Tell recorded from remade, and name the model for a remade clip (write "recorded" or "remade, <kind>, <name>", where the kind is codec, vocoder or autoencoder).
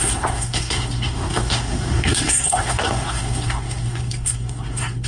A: remade, codec, SNAC